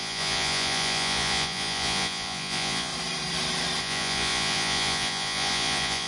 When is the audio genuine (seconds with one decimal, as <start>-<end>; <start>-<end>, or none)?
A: 2.9-3.8